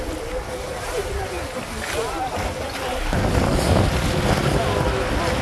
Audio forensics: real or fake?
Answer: real